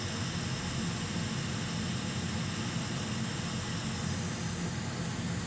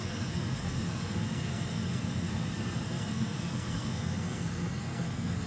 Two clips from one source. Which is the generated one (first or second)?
second